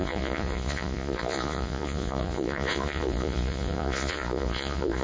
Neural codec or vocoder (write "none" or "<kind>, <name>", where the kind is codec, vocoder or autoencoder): vocoder, Vocos